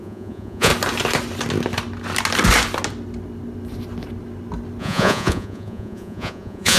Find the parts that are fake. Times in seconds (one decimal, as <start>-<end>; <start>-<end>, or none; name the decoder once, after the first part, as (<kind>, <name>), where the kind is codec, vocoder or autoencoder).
0.0-0.7 (vocoder, Vocos); 4.8-6.8